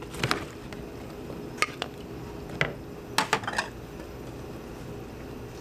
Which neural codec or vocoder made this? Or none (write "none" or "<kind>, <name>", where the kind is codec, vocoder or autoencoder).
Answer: none